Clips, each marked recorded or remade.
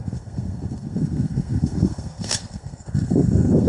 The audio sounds remade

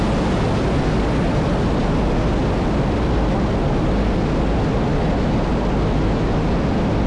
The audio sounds recorded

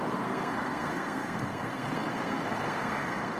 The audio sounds remade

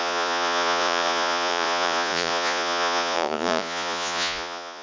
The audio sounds remade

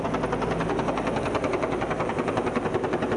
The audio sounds recorded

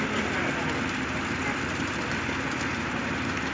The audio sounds recorded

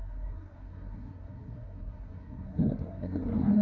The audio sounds remade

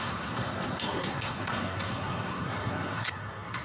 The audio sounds remade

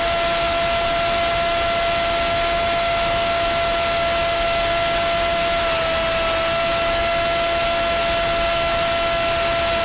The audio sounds recorded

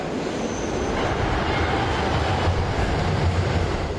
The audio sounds recorded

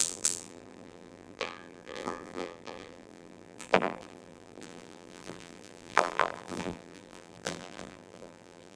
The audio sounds remade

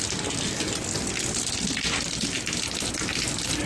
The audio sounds recorded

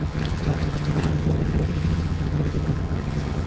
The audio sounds remade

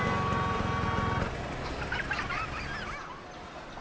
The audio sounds recorded